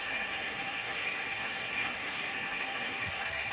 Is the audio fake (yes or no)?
yes